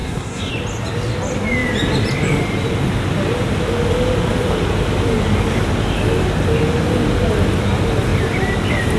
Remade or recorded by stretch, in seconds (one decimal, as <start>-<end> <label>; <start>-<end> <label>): 0.0-0.5 remade; 0.5-9.0 recorded